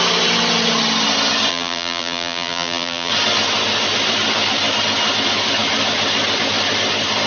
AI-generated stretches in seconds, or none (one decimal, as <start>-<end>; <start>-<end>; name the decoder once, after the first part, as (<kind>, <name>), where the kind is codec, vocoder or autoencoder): 1.5-3.1 (vocoder, BigVGAN v2)

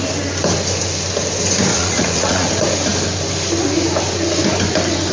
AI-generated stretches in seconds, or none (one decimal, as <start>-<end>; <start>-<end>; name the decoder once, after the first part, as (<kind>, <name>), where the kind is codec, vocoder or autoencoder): 1.7-2.5 (vocoder, Vocos)

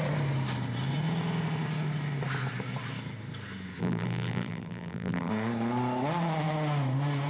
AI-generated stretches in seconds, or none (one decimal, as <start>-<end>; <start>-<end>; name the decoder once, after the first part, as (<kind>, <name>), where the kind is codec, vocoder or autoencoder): 3.8-5.3 (vocoder, BigVGAN v2)

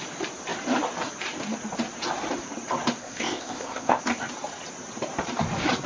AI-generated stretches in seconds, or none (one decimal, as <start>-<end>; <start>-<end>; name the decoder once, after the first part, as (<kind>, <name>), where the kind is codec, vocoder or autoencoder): 3.0-4.0 (codec, ZipCodec)

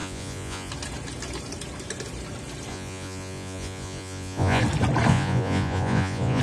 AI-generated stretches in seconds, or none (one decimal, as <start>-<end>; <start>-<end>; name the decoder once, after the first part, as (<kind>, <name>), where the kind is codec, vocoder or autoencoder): 0.0-0.7 (vocoder, Vocos); 2.7-4.6; 5.1-6.4